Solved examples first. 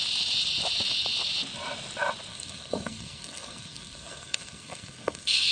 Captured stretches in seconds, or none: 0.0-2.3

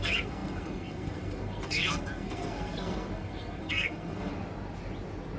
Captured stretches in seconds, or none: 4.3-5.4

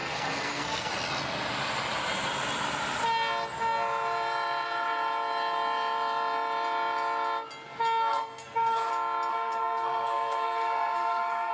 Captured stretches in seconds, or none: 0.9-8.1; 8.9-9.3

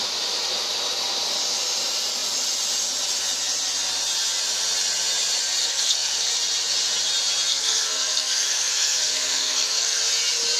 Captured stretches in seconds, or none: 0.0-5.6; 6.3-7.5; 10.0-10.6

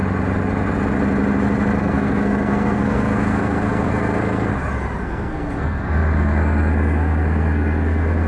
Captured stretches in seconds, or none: 0.0-1.8; 4.5-5.0

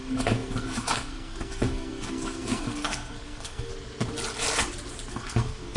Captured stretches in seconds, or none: 3.7-5.1

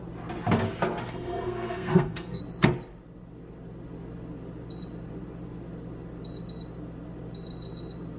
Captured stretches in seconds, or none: 0.0-1.0; 2.4-8.2